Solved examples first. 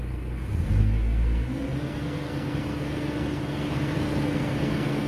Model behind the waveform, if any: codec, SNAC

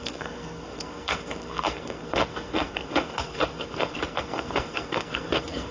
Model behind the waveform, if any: codec, SNAC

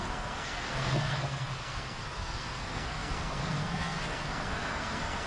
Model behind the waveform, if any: codec, SNAC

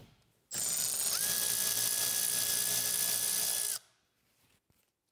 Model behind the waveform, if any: none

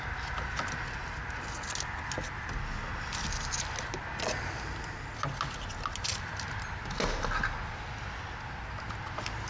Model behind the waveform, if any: none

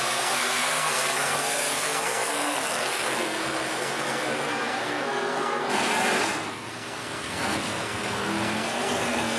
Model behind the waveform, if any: codec, SNAC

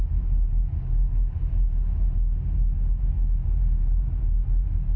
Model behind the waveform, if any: none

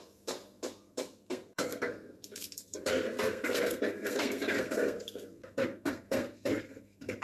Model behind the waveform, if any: codec, SNAC